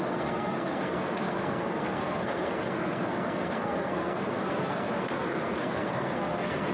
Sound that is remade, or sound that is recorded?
remade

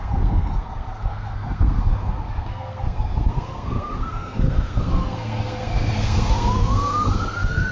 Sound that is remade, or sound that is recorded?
remade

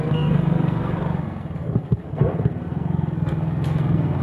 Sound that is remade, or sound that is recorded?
remade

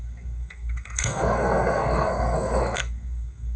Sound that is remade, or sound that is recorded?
remade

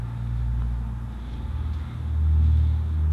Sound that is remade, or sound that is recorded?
recorded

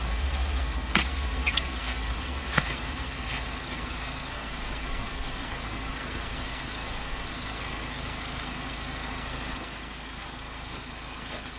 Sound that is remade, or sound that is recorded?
remade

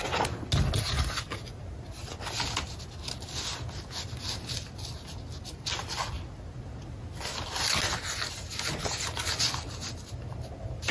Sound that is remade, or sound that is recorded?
recorded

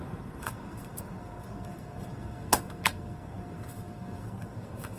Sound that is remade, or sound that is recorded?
remade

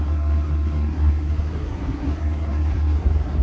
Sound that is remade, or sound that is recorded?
remade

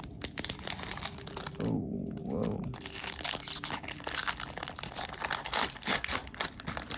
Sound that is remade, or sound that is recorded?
recorded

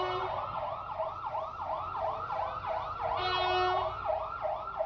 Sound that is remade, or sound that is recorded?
recorded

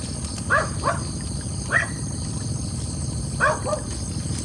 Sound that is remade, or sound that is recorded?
recorded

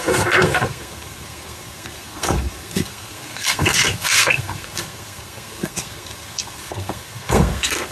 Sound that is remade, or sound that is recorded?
remade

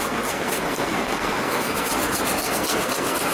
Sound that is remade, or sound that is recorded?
remade